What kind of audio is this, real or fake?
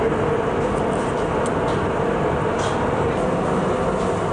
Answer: real